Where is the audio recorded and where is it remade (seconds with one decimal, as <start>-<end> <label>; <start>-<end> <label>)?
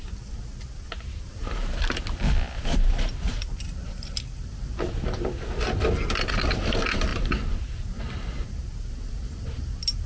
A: 0.0-10.1 recorded